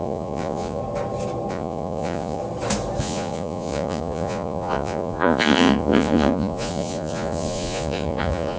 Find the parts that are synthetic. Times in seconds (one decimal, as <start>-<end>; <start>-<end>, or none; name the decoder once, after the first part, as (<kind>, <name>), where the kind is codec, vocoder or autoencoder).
0.0-0.8 (vocoder, Vocos); 1.5-2.4; 3.0-8.6